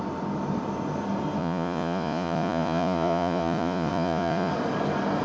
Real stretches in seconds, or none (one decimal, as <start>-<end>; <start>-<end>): 0.0-1.4; 4.5-5.2